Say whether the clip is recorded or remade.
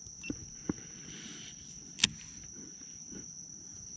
recorded